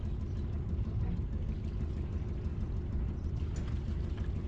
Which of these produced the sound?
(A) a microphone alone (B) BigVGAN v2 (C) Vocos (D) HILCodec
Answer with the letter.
A